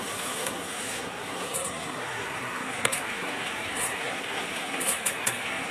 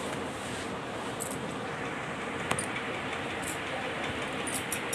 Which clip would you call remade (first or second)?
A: first